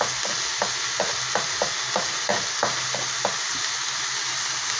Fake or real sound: real